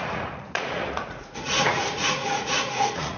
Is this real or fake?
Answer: fake